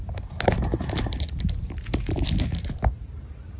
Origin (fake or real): fake